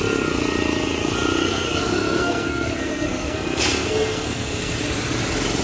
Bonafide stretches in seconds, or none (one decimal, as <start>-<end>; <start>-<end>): 0.0-1.4; 4.8-5.6